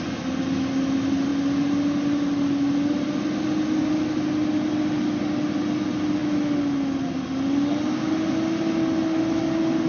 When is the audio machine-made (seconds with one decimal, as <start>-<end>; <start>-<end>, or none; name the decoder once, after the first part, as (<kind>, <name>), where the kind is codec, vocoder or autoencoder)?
none